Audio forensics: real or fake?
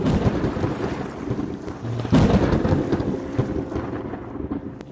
real